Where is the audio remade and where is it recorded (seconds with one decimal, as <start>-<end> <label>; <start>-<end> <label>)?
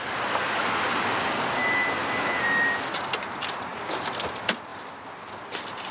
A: 0.0-4.7 recorded; 4.7-5.3 remade; 5.3-5.9 recorded